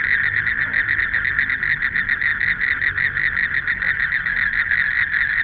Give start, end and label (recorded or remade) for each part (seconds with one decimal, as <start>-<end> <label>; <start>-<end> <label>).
0.0-5.4 recorded